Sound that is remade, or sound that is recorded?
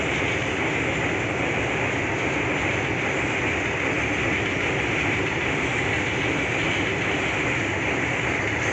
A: recorded